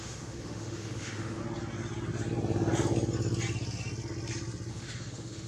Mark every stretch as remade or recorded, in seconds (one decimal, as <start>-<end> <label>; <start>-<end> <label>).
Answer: 0.0-1.4 remade; 1.4-4.7 recorded; 4.7-5.5 remade

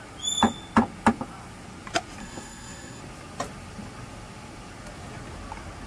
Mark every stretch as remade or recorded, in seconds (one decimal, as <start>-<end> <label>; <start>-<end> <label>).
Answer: 0.0-2.2 recorded; 2.2-3.0 remade; 3.0-5.9 recorded